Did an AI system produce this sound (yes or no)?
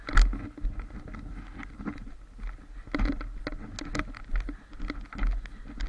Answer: no